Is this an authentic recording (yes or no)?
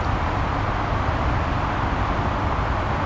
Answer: yes